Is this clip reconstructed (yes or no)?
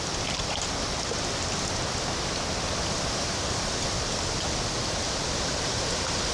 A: no